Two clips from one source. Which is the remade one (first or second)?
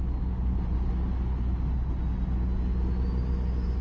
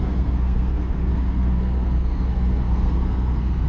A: second